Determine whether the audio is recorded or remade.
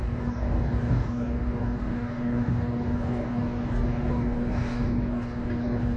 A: remade